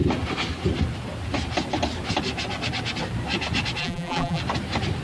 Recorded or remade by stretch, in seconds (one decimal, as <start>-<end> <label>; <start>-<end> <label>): 0.0-3.8 recorded; 3.8-4.4 remade; 4.4-5.0 recorded